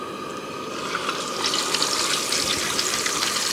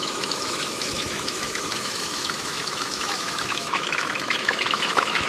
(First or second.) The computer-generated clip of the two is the second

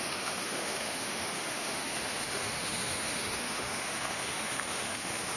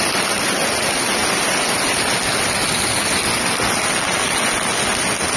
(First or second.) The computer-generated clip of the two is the first